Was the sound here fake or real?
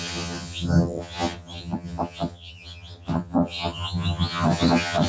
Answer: fake